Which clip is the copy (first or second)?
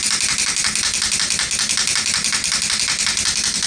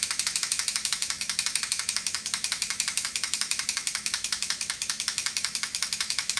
second